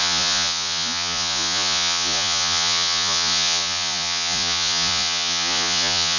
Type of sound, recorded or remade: remade